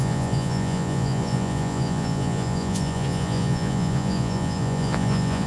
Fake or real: fake